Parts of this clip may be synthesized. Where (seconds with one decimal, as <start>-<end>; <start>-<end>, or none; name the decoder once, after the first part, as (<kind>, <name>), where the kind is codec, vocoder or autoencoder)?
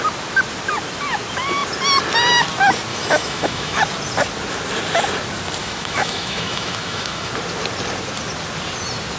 2.9-3.8 (autoencoder, DAC-VAE); 5.6-7.3